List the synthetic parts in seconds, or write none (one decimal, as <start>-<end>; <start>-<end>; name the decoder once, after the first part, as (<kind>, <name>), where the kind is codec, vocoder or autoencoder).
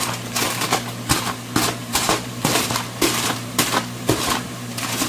1.8-5.1 (vocoder, BigVGAN v2)